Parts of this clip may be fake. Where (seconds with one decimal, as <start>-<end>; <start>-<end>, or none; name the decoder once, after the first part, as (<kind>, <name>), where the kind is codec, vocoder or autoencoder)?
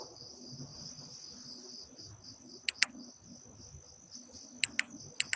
none